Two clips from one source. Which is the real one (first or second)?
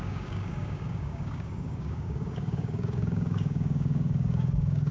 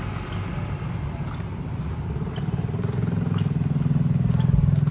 second